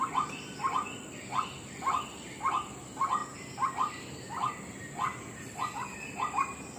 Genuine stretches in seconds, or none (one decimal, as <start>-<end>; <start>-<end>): 0.0-6.8